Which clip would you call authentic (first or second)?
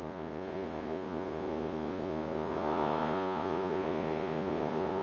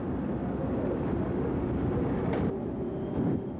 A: second